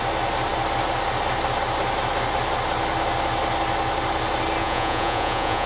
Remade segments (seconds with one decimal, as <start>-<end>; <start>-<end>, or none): 4.6-5.7